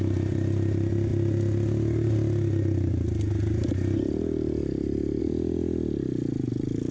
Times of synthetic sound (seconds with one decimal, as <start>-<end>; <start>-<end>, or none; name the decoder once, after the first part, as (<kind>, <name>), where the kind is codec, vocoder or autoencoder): none